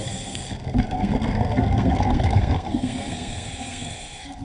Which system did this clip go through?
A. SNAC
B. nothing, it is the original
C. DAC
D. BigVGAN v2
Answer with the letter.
A